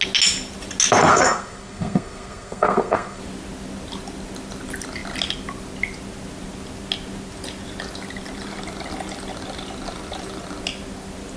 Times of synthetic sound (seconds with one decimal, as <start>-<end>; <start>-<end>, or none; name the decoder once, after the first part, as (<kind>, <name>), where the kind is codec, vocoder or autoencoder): 1.1-3.2 (codec, SNAC)